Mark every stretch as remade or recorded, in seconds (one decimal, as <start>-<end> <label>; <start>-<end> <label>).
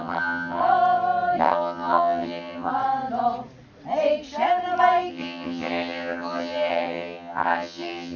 0.0-0.6 remade; 0.6-1.4 recorded; 1.4-2.7 remade; 2.7-5.1 recorded; 5.1-8.2 remade